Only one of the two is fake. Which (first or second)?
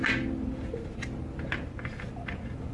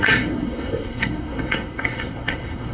second